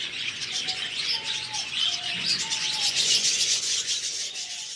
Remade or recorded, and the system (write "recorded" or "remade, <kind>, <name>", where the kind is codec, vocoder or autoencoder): remade, vocoder, Vocos